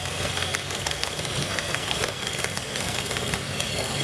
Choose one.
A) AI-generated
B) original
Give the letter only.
A